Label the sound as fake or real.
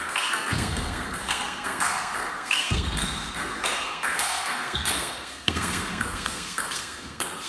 fake